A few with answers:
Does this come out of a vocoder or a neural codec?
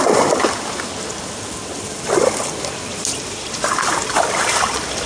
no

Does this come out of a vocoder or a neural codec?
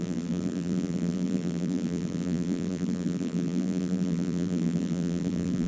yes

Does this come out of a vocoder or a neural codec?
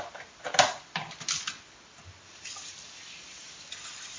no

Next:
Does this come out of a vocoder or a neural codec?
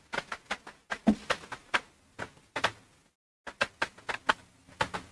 no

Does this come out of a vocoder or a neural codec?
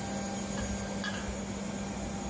no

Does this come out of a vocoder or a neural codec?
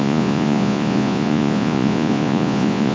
yes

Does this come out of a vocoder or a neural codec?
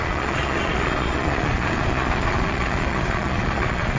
yes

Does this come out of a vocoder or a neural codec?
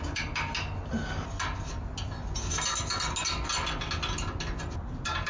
no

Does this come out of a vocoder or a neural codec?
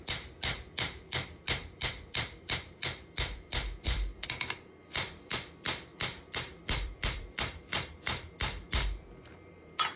yes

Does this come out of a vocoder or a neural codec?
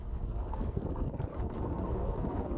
yes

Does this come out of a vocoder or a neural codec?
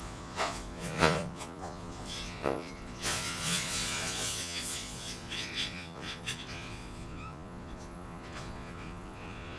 yes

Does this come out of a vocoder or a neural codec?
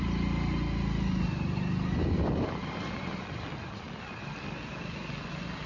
no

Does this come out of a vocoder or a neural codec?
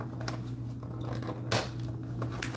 no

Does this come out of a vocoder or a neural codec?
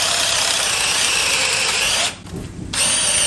no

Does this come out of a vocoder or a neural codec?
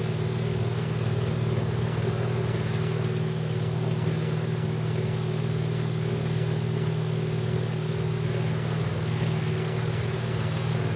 yes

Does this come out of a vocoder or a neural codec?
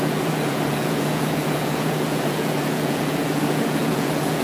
yes